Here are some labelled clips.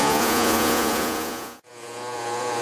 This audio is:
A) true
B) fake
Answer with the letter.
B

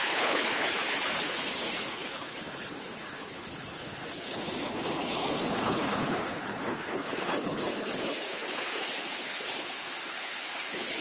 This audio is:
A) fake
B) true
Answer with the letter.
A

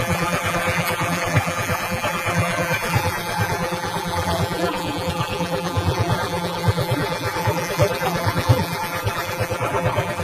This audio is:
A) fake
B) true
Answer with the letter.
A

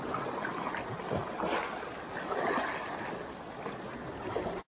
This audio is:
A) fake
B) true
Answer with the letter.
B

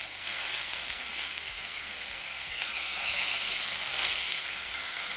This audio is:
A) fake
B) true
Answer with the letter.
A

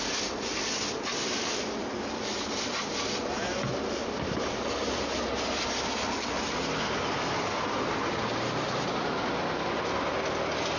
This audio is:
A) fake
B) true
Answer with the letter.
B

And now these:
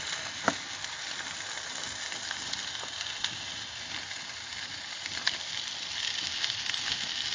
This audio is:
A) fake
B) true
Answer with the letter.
B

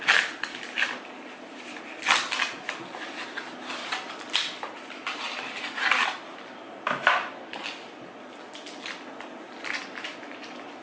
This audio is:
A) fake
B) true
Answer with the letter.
B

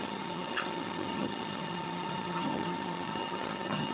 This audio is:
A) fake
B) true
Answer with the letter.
A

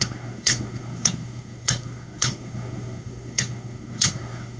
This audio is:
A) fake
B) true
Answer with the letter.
A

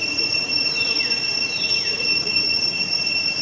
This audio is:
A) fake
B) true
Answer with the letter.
A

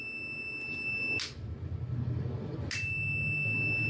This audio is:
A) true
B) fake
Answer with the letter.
A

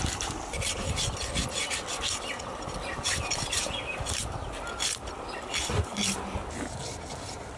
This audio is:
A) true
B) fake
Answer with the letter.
A